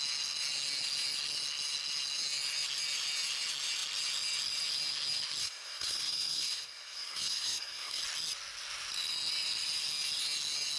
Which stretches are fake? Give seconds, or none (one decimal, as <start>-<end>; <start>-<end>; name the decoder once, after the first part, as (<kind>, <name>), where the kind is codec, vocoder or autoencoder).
5.4-8.0 (codec, SNAC)